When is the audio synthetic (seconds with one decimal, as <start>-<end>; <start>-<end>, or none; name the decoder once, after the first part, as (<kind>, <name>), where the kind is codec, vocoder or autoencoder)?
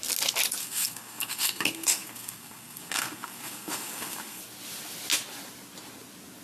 0.6-4.4 (codec, SNAC)